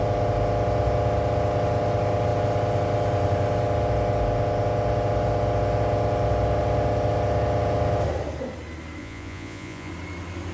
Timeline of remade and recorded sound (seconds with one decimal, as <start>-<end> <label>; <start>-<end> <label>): 0.0-9.0 recorded; 9.0-9.9 remade; 9.9-10.5 recorded